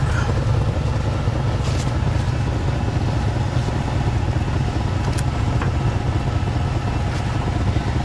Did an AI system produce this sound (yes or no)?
no